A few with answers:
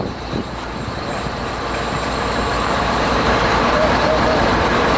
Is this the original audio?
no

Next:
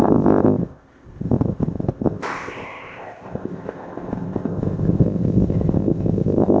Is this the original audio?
no